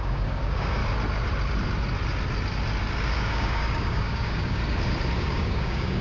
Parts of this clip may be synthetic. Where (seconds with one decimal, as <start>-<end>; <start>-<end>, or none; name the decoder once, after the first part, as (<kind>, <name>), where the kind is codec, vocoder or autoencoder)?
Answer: 0.0-0.8 (codec, DAC); 3.1-4.6; 5.2-6.0